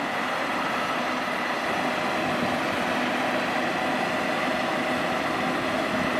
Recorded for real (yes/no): yes